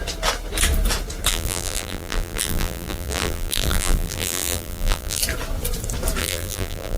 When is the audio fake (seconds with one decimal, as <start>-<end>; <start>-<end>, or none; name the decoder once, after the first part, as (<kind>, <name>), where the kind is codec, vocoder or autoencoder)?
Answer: 1.3-5.2 (vocoder, BigVGAN v2); 6.2-7.0